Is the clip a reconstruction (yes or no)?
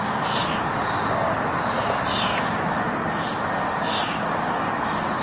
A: no